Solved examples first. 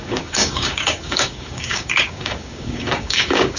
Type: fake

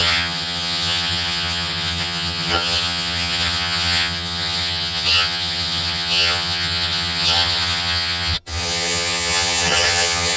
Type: fake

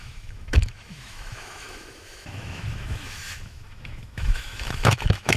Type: fake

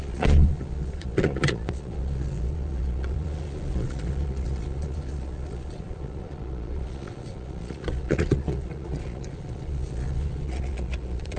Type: fake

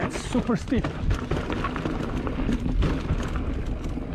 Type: real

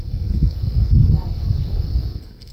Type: fake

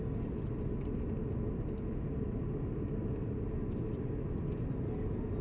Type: real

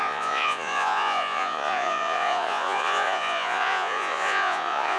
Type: fake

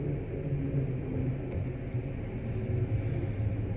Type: real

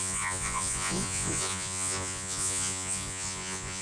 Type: fake